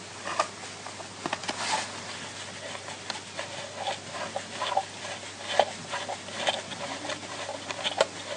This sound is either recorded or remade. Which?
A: recorded